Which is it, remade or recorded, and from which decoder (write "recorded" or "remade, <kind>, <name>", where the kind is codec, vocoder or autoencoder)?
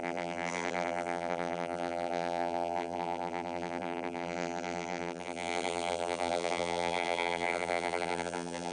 remade, vocoder, BigVGAN v2